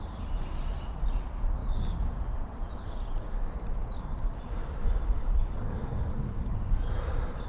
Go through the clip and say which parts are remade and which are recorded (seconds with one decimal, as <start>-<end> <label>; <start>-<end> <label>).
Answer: 0.0-5.2 recorded; 5.2-6.5 remade; 6.5-7.5 recorded